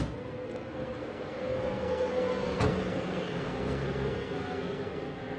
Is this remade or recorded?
remade